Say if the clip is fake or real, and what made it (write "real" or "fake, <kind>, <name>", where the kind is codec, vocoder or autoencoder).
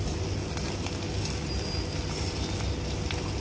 real